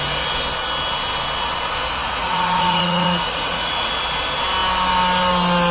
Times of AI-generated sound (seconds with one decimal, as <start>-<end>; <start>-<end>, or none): 2.0-3.9